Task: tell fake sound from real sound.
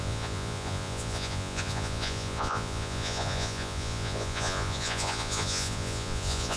fake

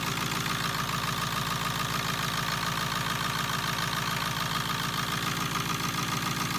real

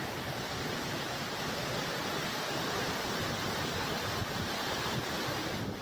real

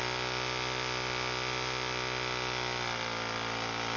real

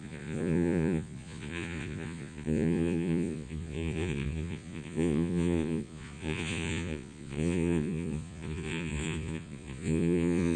fake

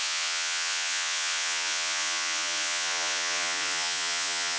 fake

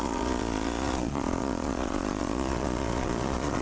fake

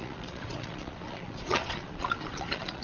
fake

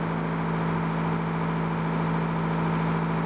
real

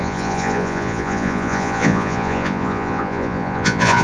fake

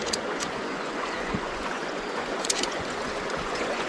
fake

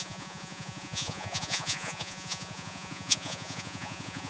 fake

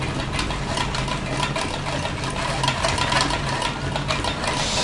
real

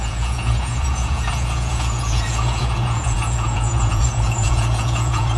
fake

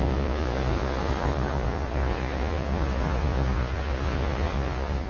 fake